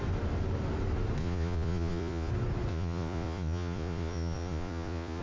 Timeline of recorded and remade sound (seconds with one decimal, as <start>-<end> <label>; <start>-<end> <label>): 0.0-1.2 recorded; 1.2-2.3 remade; 2.3-2.7 recorded; 2.7-5.2 remade